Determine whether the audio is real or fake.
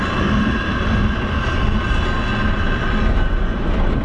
real